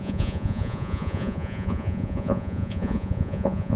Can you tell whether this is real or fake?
fake